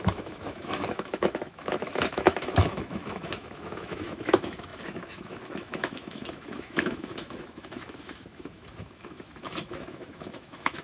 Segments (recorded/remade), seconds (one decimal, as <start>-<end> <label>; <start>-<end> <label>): 0.0-10.8 remade